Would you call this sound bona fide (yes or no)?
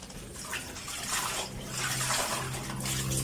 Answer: yes